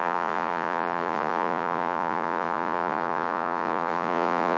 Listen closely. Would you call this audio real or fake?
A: fake